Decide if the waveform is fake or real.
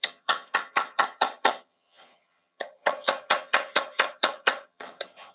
fake